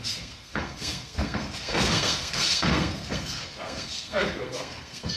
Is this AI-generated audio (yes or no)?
yes